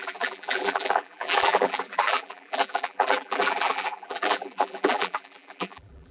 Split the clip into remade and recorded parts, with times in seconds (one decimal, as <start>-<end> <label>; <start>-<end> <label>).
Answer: 0.0-6.1 remade